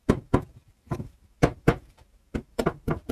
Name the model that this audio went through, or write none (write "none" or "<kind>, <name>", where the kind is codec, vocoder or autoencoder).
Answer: vocoder, BigVGAN v2